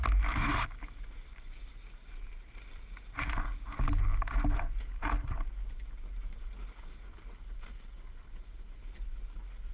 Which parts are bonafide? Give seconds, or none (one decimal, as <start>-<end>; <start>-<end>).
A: 0.0-1.7; 2.6-9.7